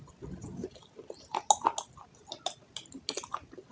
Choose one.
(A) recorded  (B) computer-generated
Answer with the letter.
A